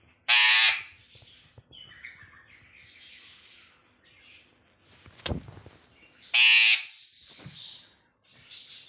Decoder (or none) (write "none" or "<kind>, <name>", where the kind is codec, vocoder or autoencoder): none